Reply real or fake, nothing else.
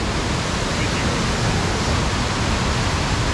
real